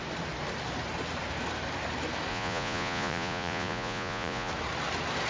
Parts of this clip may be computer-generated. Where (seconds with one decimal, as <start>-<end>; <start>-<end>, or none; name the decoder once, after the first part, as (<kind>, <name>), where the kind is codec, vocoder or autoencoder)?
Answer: 2.3-4.5 (vocoder, Vocos)